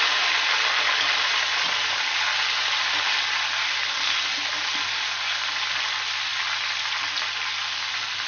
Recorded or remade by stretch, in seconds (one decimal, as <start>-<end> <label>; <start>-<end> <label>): 0.0-8.3 recorded